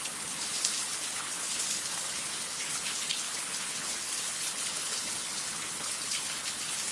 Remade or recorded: remade